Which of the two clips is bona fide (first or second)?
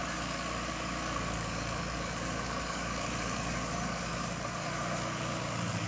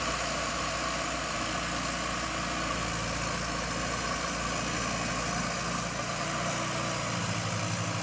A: second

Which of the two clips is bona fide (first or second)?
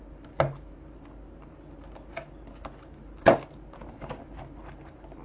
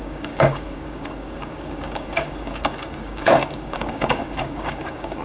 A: first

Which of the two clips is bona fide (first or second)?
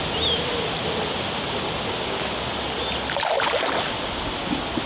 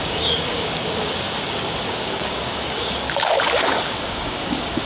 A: first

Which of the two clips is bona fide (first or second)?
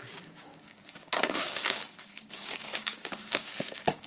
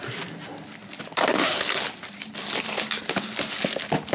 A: second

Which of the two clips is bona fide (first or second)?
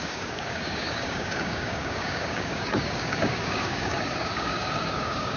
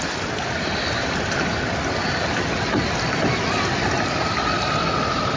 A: second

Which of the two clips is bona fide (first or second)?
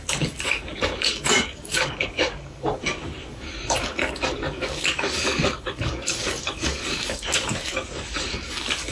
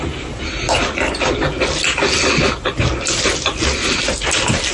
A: second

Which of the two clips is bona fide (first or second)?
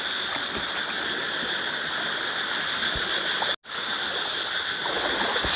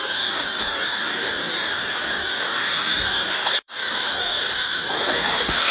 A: first